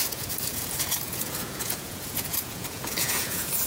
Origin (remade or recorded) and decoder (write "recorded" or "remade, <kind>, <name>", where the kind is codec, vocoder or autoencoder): remade, vocoder, Vocos